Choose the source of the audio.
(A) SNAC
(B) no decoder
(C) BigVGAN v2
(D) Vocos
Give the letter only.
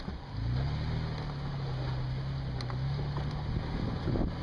B